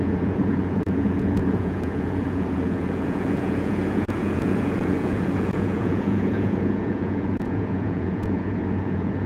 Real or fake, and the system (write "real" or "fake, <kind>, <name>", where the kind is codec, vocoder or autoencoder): fake, vocoder, Vocos